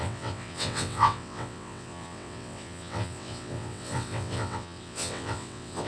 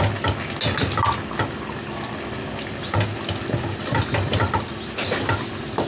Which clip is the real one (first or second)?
second